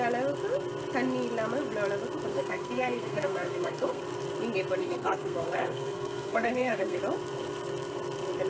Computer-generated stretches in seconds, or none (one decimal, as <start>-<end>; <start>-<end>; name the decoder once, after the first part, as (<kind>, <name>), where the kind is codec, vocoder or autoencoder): 2.3-4.0 (codec, SNAC); 4.8-7.0

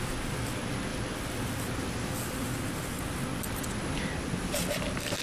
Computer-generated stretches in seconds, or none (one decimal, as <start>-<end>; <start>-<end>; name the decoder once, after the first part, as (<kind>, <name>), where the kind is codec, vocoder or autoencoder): none

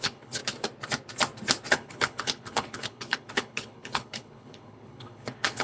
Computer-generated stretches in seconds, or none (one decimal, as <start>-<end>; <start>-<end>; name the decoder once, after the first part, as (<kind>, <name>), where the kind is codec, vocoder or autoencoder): 0.0-0.4 (codec, HILCodec); 1.7-5.6

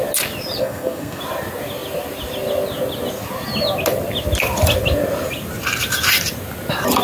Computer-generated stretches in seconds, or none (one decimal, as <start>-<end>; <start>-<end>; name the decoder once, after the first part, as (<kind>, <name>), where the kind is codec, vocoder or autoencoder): 0.6-1.2 (codec, SNAC)

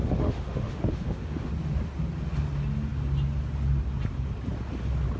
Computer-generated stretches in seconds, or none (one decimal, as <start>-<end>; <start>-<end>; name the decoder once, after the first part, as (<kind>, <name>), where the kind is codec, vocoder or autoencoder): 0.0-1.5 (autoencoder, DAC-VAE)

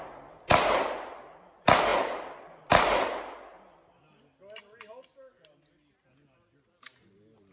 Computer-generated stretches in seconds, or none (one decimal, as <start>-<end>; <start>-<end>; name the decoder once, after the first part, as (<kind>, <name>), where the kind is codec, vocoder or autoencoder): none

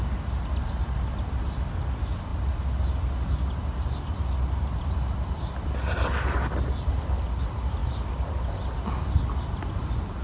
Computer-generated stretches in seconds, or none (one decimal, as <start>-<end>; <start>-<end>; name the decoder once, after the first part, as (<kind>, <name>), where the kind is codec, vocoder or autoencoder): none

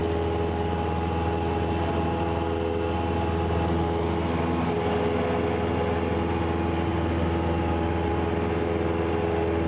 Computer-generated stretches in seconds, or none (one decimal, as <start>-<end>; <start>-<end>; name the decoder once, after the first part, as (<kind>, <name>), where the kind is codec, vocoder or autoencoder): 0.0-1.9 (vocoder, BigVGAN v2); 6.9-8.1